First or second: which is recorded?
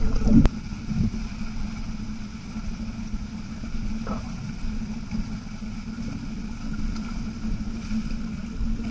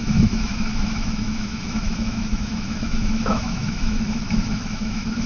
first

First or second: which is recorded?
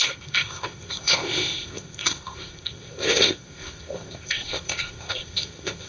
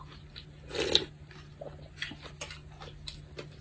second